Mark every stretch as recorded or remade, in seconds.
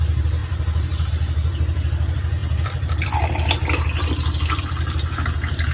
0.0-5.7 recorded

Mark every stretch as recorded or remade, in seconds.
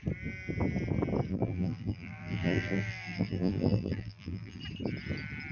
0.0-1.3 recorded; 1.3-4.6 remade; 4.6-5.5 recorded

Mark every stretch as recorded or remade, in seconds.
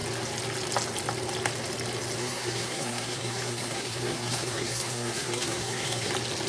0.0-2.2 recorded; 2.2-6.1 remade; 6.1-6.5 recorded